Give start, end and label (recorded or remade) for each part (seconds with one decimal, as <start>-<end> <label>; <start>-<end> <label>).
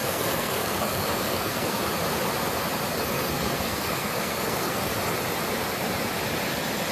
0.0-1.8 remade; 1.8-2.9 recorded; 2.9-4.9 remade; 4.9-6.9 recorded